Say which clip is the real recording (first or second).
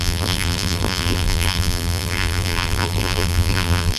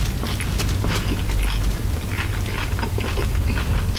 second